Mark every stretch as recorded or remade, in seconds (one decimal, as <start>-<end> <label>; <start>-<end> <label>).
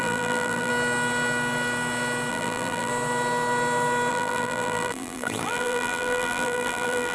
0.0-0.7 remade; 0.7-2.3 recorded; 2.3-2.9 remade; 2.9-4.1 recorded; 4.1-7.1 remade